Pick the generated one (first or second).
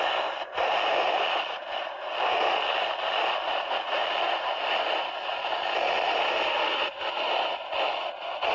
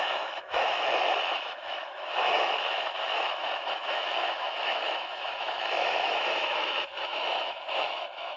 second